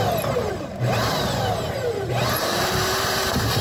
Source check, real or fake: fake